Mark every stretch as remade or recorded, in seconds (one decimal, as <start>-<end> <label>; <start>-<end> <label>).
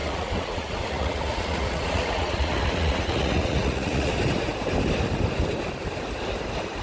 0.0-4.1 remade; 4.1-6.8 recorded